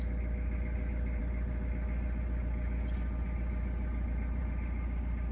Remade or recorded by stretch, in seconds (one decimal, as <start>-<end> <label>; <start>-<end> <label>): 0.0-5.3 recorded